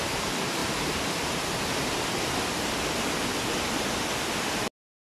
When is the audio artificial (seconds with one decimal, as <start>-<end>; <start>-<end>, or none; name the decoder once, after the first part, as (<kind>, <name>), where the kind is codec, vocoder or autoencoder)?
none